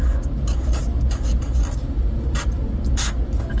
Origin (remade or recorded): recorded